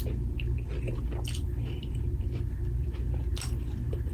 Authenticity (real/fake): real